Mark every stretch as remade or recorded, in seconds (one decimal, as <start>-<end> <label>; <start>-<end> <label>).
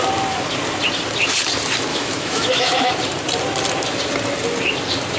0.0-1.9 recorded; 1.9-2.9 remade; 2.9-5.2 recorded